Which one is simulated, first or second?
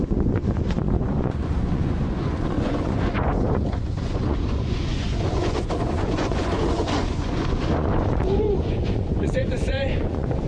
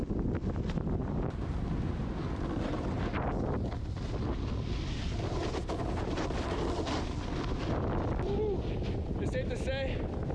first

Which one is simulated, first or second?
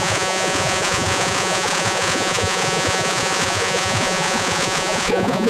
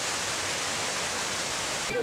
first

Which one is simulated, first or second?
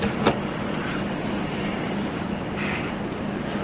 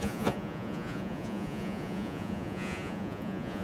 second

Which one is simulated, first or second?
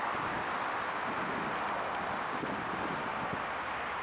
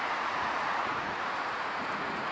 second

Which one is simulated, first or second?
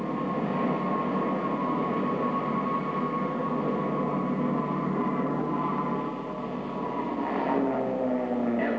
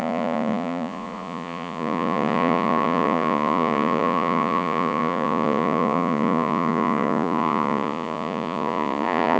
second